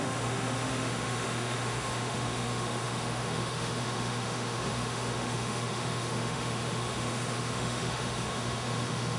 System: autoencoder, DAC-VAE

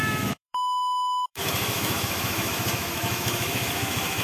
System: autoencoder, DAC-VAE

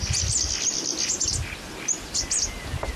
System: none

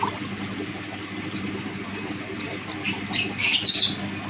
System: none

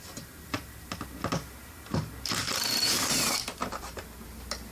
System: none